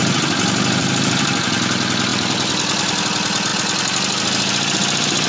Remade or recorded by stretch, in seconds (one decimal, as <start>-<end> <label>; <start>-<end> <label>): 0.0-0.8 recorded; 0.8-1.4 remade; 1.4-2.1 recorded; 2.1-3.0 remade; 3.0-5.3 recorded